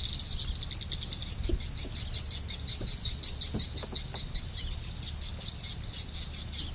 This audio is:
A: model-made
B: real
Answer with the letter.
B